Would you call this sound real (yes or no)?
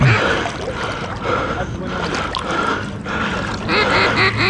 yes